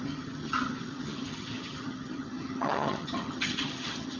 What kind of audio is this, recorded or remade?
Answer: remade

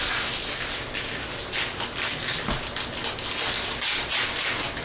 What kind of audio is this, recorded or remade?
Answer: recorded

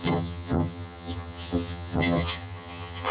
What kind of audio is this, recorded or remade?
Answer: remade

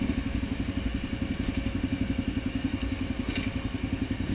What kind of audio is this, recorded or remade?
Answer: recorded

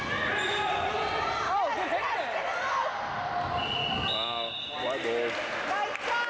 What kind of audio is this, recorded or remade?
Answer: recorded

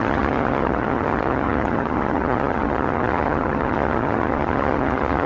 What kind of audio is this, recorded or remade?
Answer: remade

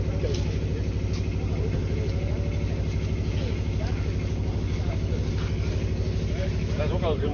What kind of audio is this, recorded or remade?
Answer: recorded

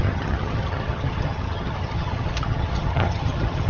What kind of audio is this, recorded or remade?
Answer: remade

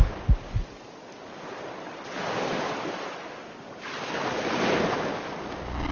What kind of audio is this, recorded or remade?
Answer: recorded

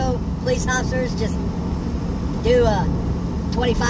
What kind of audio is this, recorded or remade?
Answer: recorded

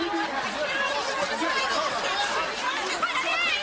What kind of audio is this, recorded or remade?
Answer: recorded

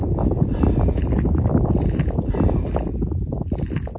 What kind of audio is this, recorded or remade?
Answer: recorded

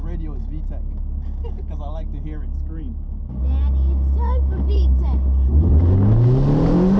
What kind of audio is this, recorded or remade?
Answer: recorded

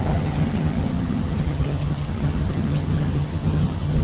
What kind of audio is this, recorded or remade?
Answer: remade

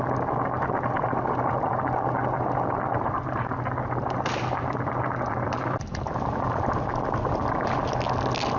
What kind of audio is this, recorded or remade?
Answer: recorded